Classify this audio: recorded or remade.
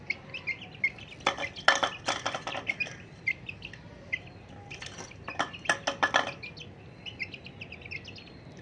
recorded